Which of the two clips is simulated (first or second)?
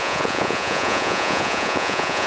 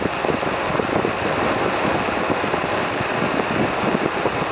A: first